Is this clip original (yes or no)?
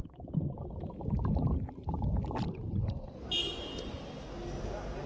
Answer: yes